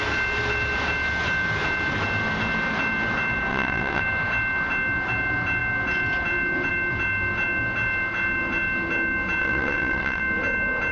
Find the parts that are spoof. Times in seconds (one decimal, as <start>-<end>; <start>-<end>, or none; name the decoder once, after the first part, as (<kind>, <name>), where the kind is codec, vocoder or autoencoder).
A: 3.5-4.0 (vocoder, WaveNeXt); 9.4-10.2